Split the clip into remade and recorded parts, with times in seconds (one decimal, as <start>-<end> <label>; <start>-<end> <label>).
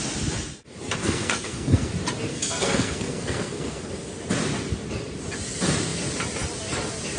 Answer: 0.0-1.0 recorded; 1.0-1.9 remade; 1.9-2.3 recorded; 2.3-3.9 remade; 3.9-7.2 recorded